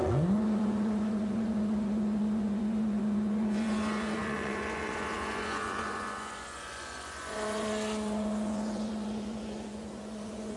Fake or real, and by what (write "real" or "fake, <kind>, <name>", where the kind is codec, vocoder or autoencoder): fake, vocoder, Vocos